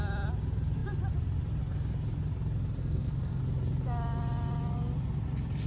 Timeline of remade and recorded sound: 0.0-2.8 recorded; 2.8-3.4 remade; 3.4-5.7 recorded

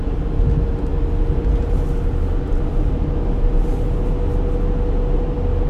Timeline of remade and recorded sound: 0.0-5.7 recorded

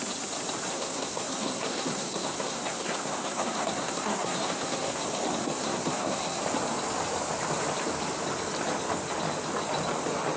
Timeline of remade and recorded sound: 0.0-0.7 recorded; 0.7-5.0 remade; 5.0-5.4 recorded; 5.4-6.4 remade; 6.4-10.4 recorded

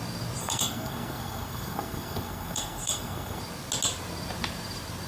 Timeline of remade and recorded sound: 0.0-0.4 recorded; 0.4-3.4 remade; 3.4-5.1 recorded

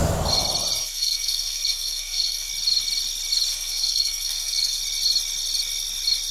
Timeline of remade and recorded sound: 0.0-0.8 recorded; 0.8-2.5 remade; 2.5-3.5 recorded; 3.5-4.8 remade; 4.8-6.3 recorded